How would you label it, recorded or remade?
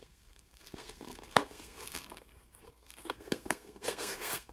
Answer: remade